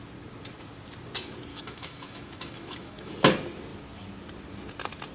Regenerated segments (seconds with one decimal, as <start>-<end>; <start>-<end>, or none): 1.5-3.1